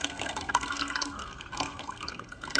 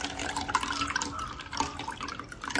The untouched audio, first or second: second